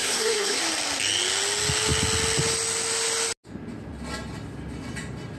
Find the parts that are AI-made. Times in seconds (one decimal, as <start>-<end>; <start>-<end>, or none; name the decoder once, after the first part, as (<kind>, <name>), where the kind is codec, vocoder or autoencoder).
0.0-0.6 (codec, SNAC)